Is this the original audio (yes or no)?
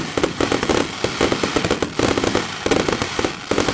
yes